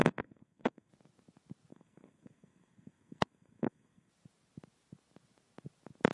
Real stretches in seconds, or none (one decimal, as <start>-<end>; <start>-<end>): 0.9-1.7; 4.1-6.1